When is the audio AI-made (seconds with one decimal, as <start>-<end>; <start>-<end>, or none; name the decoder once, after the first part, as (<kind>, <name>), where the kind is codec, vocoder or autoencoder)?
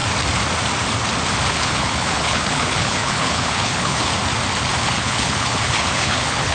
1.5-4.1 (codec, HILCodec); 4.8-6.5